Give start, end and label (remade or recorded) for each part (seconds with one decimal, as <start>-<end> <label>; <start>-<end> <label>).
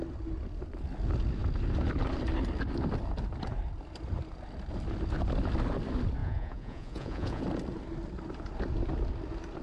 0.0-6.2 recorded; 6.2-7.4 remade; 7.4-9.6 recorded